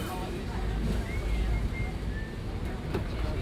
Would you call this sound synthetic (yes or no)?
no